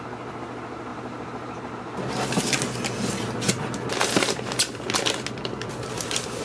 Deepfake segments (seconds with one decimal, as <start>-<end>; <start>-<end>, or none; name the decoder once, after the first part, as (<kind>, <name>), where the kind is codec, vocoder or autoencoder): 0.9-2.0 (vocoder, BigVGAN v2)